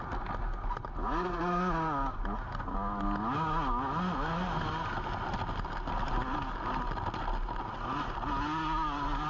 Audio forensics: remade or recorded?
recorded